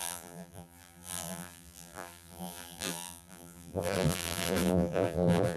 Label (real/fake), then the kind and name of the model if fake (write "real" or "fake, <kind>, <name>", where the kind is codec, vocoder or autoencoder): fake, vocoder, BigVGAN v2